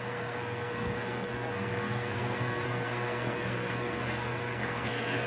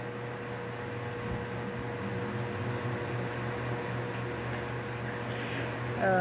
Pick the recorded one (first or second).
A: second